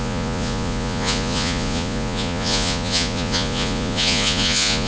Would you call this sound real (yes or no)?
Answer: no